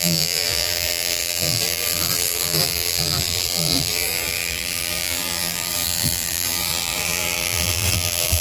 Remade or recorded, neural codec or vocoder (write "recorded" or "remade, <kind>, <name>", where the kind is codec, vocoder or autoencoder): remade, vocoder, BigVGAN v2